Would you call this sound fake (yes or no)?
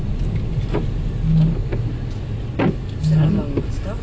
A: no